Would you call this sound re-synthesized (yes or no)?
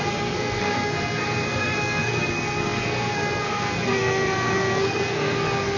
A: yes